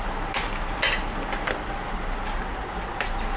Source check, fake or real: real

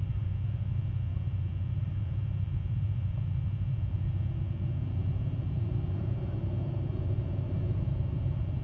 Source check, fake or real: fake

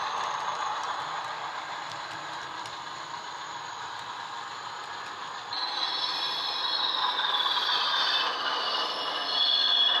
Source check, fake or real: fake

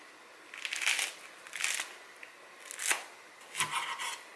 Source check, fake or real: real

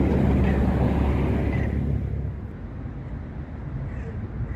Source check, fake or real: real